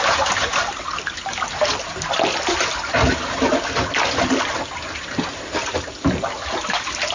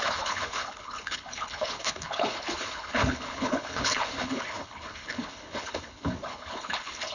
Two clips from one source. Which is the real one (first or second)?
first